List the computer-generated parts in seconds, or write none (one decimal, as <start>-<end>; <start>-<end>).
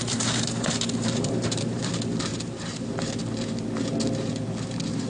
0.0-1.9; 2.3-2.8